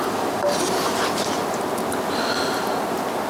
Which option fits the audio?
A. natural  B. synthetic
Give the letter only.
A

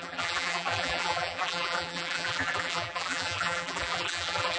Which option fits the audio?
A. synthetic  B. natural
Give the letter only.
A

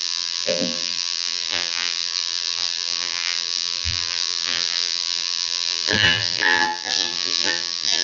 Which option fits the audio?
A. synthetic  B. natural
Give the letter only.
A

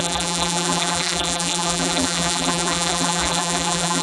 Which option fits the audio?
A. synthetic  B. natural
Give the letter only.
A